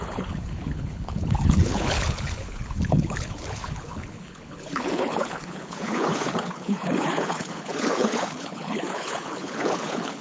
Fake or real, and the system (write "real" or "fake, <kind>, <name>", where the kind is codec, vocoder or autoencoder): fake, codec, HILCodec